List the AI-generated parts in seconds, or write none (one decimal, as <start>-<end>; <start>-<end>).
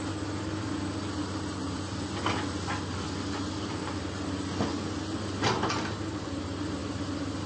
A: none